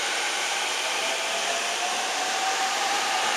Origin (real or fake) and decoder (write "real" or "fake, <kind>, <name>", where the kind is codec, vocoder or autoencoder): fake, vocoder, BigVGAN v2